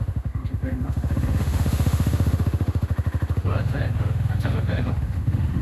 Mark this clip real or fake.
fake